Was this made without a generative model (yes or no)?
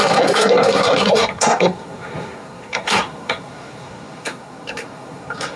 no